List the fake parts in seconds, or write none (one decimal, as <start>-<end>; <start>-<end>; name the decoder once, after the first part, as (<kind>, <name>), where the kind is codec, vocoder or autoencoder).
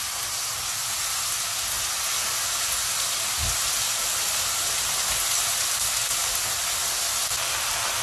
none